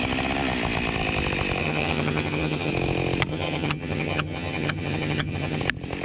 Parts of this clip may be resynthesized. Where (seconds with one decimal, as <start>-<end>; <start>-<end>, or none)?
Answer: 1.6-2.7; 3.3-5.6